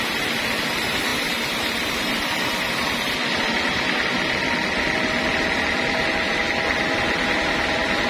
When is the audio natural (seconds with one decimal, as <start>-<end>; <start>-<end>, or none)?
0.0-8.1